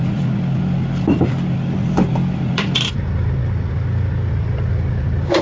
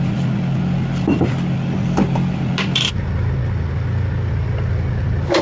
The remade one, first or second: first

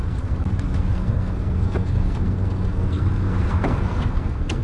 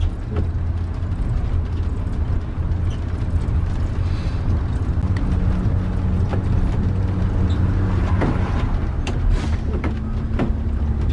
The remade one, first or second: first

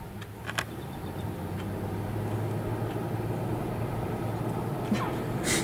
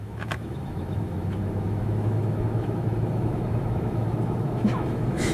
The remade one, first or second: second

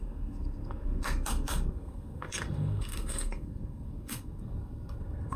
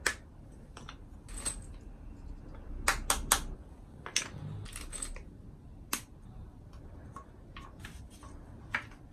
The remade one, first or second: first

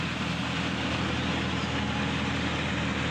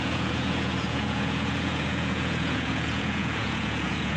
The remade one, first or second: second